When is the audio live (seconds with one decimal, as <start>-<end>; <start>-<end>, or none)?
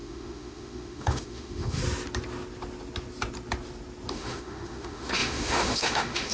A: 1.8-4.1